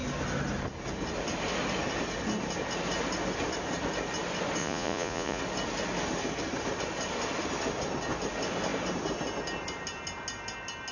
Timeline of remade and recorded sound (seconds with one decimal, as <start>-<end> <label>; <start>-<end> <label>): 0.0-4.6 recorded; 4.6-5.4 remade; 5.4-10.9 recorded